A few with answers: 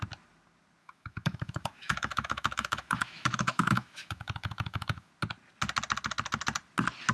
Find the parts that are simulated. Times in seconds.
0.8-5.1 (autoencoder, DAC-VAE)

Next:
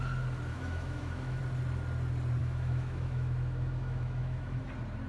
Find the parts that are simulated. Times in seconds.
0.5-1.4 (autoencoder, DAC-VAE); 2.4-4.6

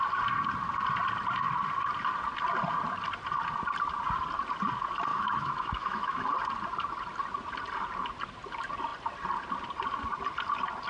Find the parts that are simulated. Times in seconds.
5.1-6.3 (autoencoder, DAC-VAE)